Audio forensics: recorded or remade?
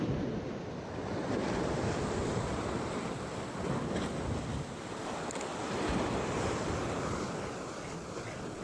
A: recorded